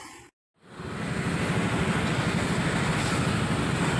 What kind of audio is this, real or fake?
real